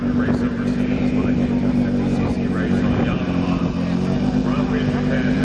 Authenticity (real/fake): real